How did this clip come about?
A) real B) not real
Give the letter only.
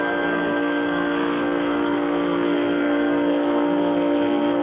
B